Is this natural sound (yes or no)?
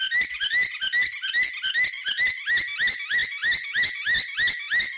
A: yes